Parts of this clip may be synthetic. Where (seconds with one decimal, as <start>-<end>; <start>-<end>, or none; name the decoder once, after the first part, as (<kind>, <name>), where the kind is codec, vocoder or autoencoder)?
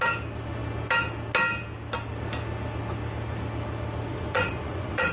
4.1-5.1 (vocoder, Vocos)